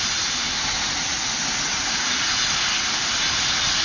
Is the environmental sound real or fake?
real